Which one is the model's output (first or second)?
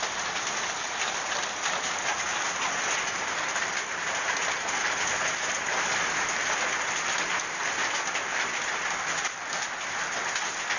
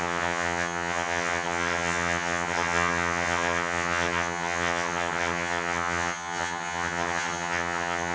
second